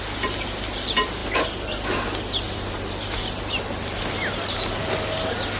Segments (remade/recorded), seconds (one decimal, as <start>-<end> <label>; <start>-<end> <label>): 0.0-5.6 recorded